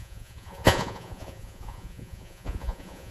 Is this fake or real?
fake